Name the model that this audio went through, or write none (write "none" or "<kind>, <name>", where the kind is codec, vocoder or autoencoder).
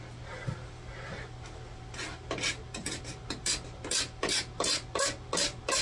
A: none